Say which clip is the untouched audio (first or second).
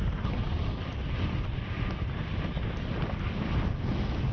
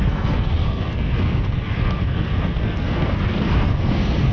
first